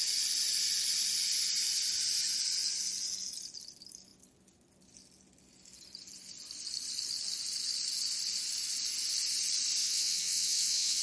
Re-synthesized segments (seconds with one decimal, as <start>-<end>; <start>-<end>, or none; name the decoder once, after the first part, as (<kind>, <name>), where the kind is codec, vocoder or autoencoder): 9.8-11.0 (vocoder, WaveNeXt)